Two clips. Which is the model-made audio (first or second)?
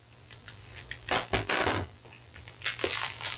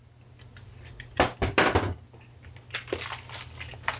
first